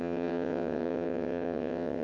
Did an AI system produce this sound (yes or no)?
yes